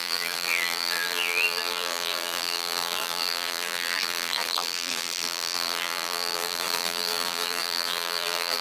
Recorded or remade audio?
remade